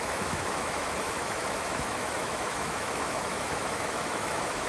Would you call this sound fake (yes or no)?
yes